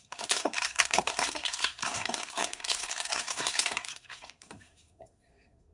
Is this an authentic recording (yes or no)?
no